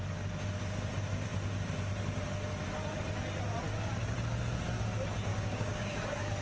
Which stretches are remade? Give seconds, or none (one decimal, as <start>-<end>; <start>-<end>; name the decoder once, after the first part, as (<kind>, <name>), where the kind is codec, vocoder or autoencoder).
5.3-5.9 (codec, DAC)